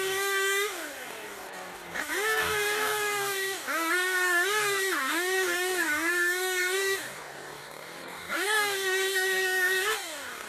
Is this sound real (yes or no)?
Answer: no